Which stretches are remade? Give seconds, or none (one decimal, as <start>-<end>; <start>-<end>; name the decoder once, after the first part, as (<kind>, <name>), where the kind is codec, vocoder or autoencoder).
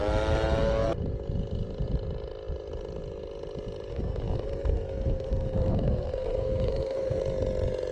3.9-7.2 (codec, SNAC)